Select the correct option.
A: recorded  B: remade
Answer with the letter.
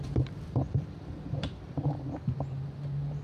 B